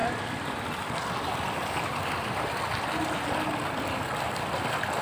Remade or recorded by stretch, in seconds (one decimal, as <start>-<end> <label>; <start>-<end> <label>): 0.0-5.0 recorded